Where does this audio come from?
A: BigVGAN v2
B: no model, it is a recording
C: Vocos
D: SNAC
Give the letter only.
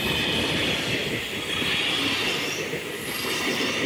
B